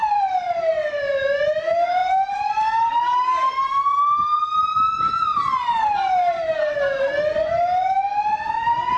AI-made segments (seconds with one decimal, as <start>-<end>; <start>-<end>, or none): 0.0-0.7; 5.3-7.0